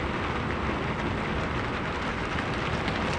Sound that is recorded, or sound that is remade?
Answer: recorded